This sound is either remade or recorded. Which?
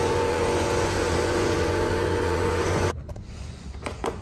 remade